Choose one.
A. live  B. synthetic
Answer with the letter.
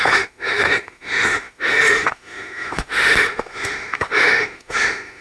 B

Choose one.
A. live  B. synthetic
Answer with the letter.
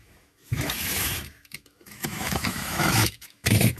B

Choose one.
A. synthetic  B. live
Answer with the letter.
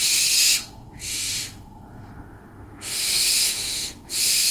A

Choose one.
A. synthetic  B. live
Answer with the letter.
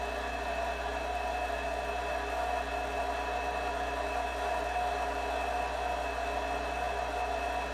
B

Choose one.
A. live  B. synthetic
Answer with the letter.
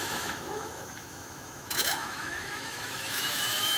B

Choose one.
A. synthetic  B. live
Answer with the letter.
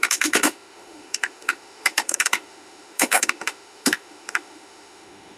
A